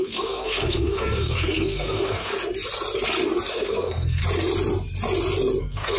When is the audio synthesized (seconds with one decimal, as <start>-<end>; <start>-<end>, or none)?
0.0-2.3; 3.5-4.2; 5.6-6.0

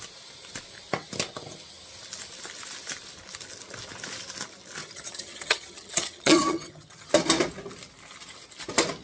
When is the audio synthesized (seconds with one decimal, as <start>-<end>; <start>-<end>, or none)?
4.8-7.1